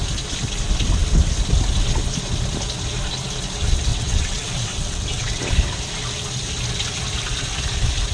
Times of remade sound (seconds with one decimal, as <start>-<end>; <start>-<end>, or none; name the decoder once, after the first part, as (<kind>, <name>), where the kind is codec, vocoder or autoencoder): 3.9-5.4 (vocoder, WaveNeXt)